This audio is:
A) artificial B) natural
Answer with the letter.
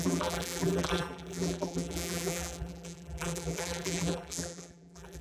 A